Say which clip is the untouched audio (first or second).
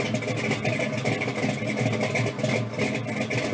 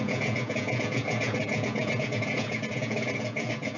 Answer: first